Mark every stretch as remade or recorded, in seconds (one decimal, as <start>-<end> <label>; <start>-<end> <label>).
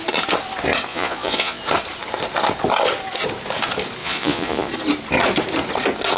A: 0.0-0.9 recorded; 0.9-1.6 remade; 1.6-4.0 recorded; 4.0-4.7 remade; 4.7-6.2 recorded